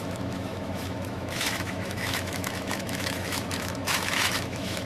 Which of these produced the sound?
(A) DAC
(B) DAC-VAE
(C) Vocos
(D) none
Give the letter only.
B